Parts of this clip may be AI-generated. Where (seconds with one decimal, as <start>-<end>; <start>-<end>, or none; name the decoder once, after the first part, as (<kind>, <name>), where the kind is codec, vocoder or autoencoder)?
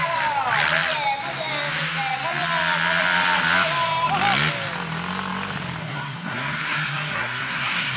5.8-8.0 (codec, SNAC)